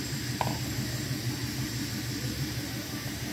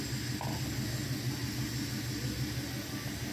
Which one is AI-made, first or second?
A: first